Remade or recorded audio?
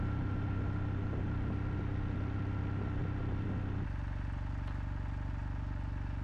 recorded